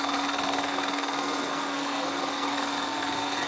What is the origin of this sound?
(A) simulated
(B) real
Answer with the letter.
A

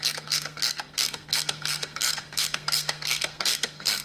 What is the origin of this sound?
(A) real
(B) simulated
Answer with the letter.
B